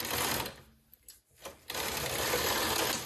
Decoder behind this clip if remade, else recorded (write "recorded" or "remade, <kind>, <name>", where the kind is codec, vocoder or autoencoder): recorded